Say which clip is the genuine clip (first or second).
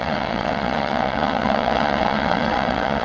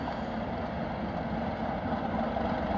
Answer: second